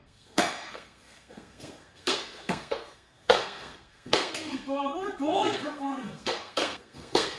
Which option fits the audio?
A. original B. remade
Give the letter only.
B